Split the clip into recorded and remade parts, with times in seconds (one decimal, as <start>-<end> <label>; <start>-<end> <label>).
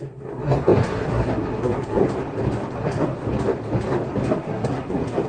0.0-2.0 remade; 2.0-2.7 recorded; 2.7-3.2 remade; 3.2-4.3 recorded; 4.3-5.3 remade